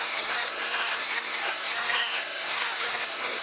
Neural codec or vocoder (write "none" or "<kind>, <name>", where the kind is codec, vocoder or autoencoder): codec, SNAC